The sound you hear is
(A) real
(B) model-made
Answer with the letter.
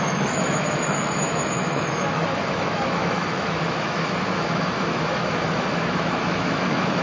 B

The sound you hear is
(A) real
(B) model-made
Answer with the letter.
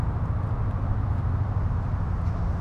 A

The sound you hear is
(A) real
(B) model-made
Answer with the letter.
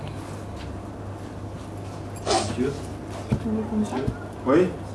A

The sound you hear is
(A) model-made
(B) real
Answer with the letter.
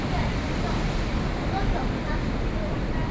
B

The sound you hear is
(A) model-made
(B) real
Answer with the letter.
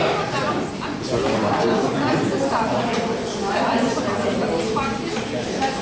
B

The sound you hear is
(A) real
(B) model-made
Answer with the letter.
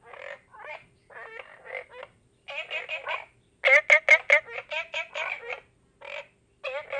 A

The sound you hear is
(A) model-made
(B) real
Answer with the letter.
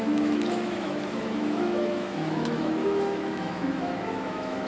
A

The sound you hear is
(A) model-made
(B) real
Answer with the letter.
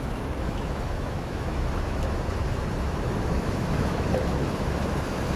A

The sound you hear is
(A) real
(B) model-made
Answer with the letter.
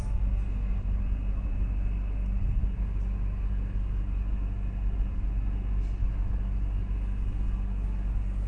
A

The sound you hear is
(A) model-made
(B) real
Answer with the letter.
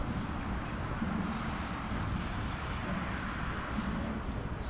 B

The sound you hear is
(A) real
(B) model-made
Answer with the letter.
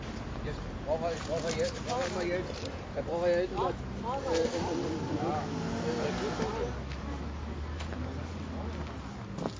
A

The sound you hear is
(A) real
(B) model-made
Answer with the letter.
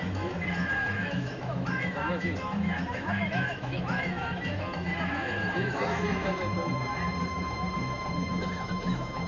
B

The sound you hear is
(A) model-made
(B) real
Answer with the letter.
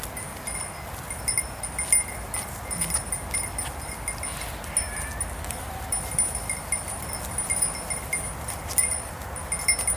B